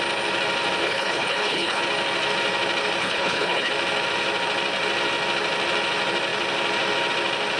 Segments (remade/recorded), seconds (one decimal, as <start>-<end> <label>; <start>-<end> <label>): 0.0-0.8 recorded; 0.8-1.8 remade; 1.8-3.0 recorded; 3.0-3.7 remade; 3.7-7.6 recorded